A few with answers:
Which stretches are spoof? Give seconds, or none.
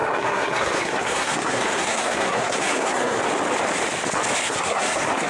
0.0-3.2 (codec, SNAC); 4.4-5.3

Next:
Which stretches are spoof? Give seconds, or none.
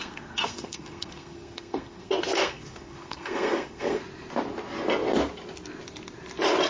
0.0-4.0 (codec, SNAC)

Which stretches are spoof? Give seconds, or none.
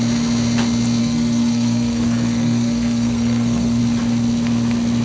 1.0-3.8 (codec, SNAC)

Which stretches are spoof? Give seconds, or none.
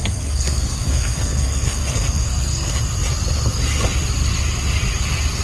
0.0-2.8 (codec, SNAC)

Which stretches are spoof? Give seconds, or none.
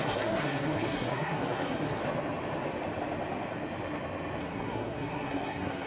0.0-2.0 (codec, SNAC); 4.4-5.9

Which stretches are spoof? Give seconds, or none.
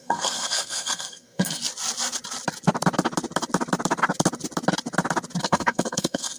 0.0-1.6 (codec, SNAC); 5.4-6.4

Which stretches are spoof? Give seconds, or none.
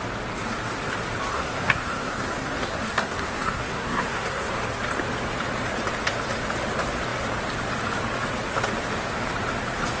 1.3-4.5 (codec, SNAC)